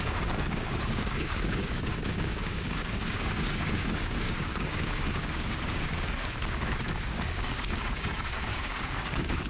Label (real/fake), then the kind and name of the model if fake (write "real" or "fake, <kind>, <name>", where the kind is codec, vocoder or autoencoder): fake, codec, DAC